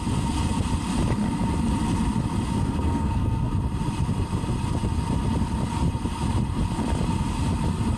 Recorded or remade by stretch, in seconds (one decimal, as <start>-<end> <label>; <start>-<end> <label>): 0.0-2.5 recorded; 2.5-3.5 remade; 3.5-8.0 recorded